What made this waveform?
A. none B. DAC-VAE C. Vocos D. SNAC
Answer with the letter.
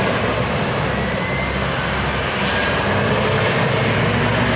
A